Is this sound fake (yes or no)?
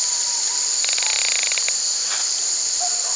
yes